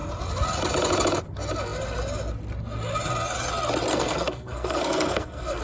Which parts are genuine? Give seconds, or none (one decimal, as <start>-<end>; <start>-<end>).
0.0-3.9